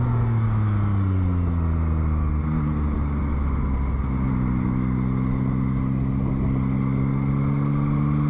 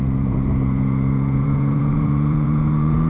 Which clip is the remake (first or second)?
second